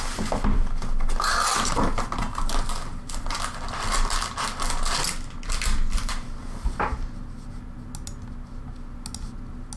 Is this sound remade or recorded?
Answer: recorded